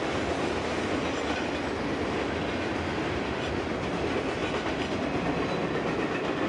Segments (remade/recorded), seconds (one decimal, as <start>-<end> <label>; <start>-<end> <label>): 0.0-6.5 recorded